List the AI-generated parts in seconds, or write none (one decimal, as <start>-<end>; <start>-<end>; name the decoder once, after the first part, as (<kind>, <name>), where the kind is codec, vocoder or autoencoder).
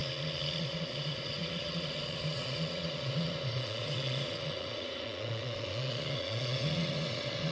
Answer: 0.6-7.5 (vocoder, Vocos)